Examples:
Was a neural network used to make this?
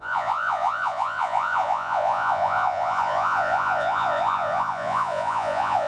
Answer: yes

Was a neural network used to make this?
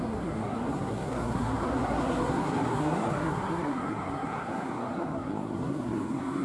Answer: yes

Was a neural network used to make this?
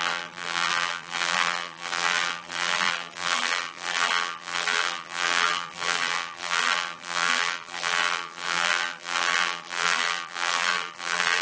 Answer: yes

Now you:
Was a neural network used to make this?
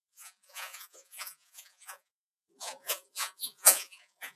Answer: yes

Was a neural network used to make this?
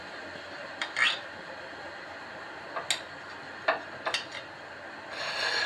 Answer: no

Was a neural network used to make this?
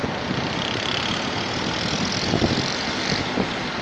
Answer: no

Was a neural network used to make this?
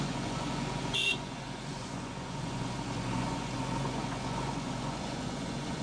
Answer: yes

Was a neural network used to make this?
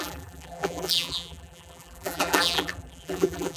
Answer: yes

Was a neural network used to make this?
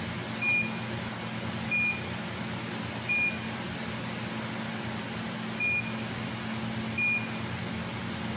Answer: no